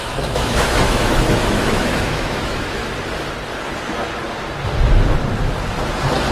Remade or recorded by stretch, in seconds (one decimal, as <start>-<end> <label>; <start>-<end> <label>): 0.0-2.8 remade; 2.8-6.3 recorded